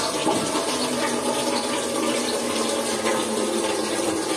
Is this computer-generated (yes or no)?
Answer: no